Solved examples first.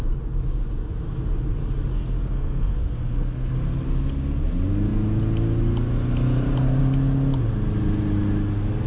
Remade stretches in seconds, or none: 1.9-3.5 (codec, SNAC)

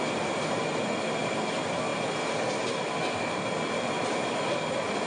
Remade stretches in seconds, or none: none

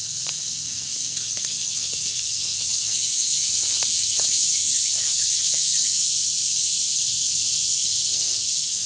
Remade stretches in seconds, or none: 0.0-8.9 (codec, SNAC)

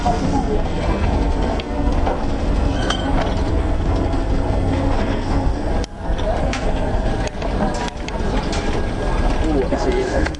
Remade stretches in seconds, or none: 0.0-3.0 (codec, SNAC); 3.5-5.7; 6.4-7.1; 9.7-10.4

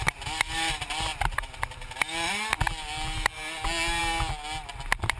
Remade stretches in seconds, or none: none

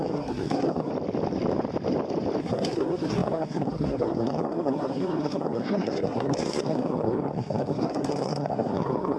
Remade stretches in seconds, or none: 0.0-0.9 (codec, SNAC); 2.4-9.2

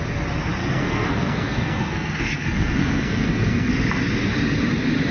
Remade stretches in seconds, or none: 0.6-3.7 (codec, SNAC)